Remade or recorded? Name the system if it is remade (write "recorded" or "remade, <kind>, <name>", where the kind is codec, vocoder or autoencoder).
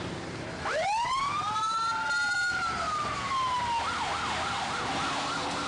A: recorded